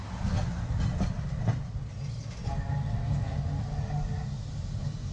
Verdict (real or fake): real